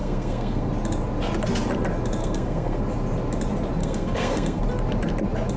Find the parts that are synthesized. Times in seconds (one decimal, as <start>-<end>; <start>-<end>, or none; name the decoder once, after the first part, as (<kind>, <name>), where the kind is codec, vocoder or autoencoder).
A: 0.0-0.7 (codec, SNAC); 2.2-2.8; 3.8-4.6